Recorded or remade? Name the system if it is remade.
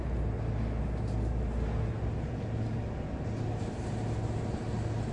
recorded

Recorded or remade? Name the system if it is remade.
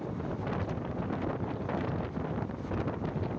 recorded